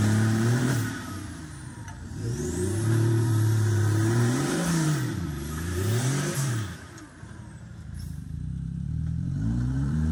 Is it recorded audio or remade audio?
remade